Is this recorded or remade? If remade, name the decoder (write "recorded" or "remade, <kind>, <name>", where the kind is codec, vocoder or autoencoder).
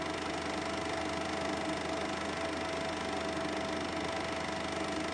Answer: recorded